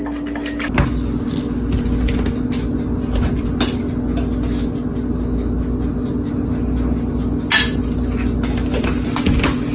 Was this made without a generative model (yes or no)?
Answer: yes